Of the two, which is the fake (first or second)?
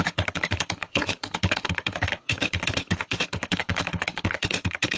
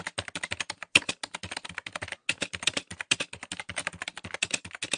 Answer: first